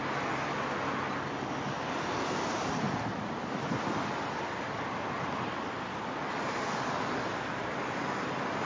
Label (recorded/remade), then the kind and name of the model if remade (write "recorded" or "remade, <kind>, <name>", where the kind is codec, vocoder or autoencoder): recorded